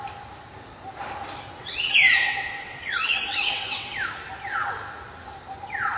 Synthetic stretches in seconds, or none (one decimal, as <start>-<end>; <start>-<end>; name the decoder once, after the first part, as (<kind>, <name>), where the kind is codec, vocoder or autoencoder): 1.6-4.1 (vocoder, WaveNeXt)